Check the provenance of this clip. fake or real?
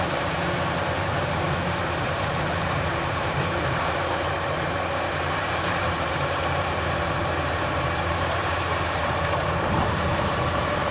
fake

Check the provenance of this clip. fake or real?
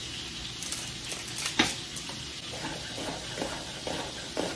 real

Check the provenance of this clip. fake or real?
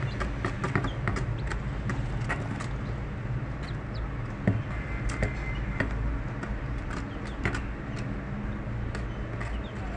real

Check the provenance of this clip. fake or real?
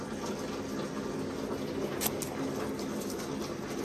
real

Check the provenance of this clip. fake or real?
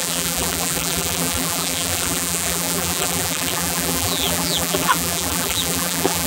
fake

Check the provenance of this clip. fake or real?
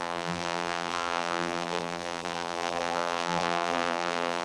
fake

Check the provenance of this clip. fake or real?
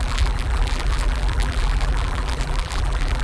fake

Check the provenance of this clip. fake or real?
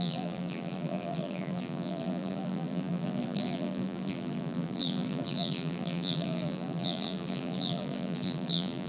fake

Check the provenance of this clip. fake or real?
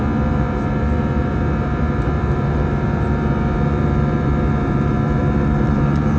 fake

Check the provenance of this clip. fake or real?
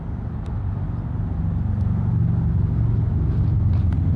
real